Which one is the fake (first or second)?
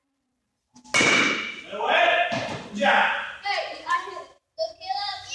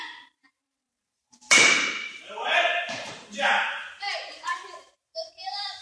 second